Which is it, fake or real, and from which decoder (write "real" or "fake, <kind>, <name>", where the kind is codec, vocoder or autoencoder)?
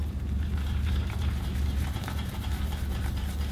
fake, vocoder, BigVGAN v2